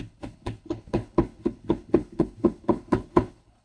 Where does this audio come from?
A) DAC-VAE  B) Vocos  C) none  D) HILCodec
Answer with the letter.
D